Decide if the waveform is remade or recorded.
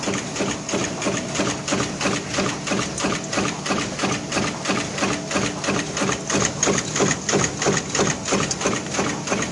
recorded